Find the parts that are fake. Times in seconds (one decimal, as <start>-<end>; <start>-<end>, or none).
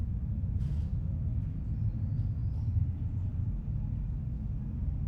none